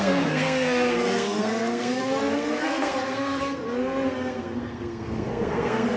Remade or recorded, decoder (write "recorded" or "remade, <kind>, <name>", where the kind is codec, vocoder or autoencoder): remade, codec, SNAC